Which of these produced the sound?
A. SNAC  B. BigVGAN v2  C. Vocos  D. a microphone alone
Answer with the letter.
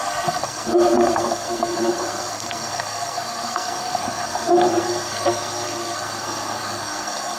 A